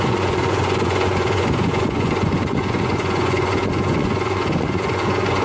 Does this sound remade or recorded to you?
remade